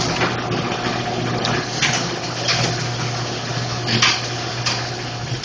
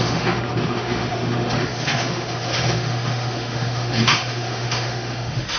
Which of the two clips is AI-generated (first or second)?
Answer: second